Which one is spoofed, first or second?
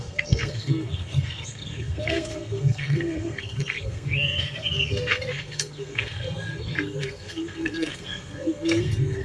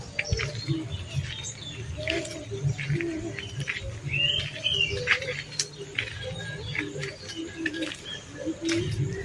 first